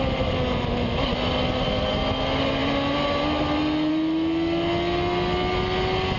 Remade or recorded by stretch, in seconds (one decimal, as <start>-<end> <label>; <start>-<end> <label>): 0.0-6.2 recorded